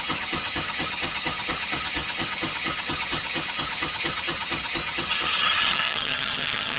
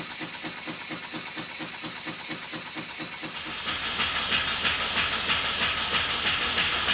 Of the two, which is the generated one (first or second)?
first